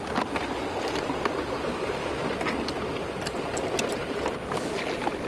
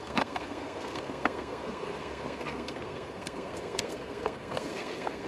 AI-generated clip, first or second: second